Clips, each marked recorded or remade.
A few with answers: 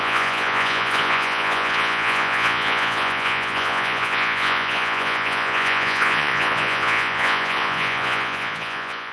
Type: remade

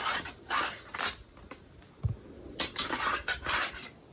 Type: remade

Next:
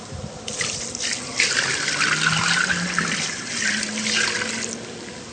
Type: recorded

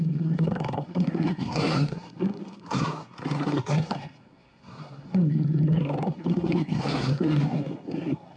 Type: remade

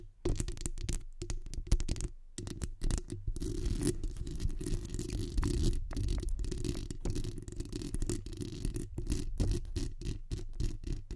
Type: recorded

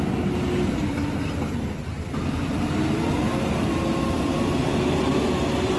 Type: recorded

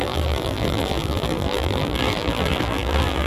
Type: remade